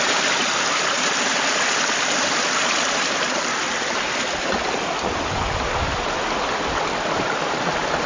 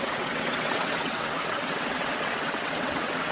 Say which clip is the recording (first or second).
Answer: first